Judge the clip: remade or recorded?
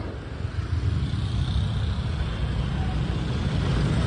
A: recorded